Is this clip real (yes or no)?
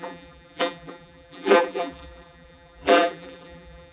no